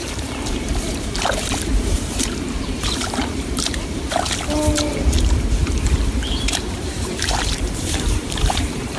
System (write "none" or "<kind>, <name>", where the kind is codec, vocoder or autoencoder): vocoder, BigVGAN v2